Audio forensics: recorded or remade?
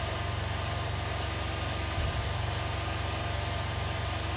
recorded